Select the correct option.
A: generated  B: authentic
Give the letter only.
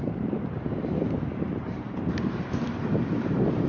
A